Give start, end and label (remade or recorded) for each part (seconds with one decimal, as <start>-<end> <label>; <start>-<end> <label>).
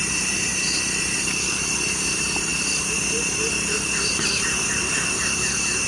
0.0-5.9 recorded